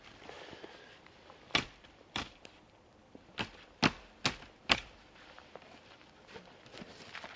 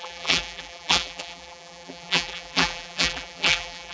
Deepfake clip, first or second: second